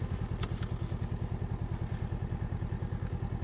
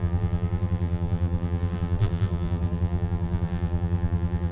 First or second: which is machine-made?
second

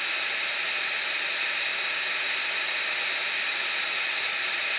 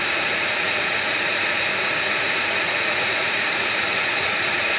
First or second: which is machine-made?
second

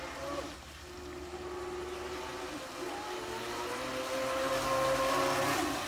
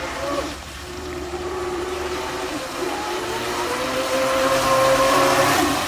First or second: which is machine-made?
second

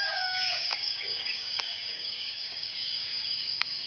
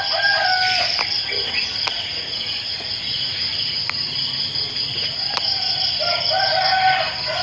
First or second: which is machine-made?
first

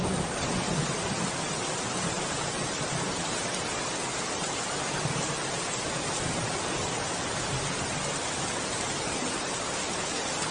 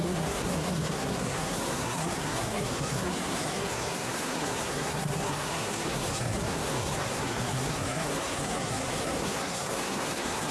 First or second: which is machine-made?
second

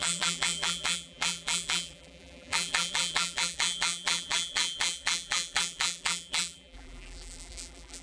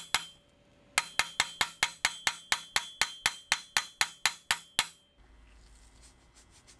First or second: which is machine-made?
first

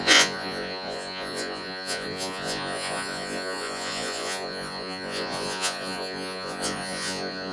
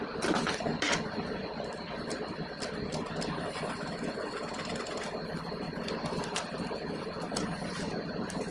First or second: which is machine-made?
first